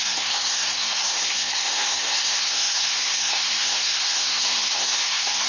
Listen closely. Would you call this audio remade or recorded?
remade